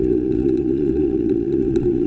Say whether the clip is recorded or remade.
remade